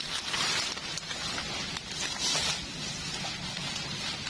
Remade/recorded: recorded